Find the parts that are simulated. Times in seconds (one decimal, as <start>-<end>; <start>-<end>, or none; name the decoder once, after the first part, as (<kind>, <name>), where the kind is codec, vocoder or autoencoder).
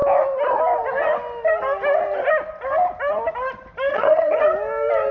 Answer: 3.9-4.4 (vocoder, HiFi-GAN)